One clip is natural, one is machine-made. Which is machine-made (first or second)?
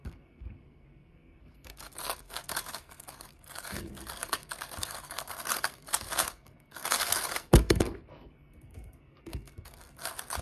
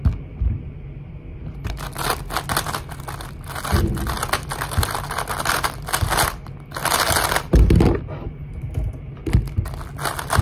first